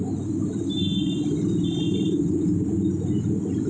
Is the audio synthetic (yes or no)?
no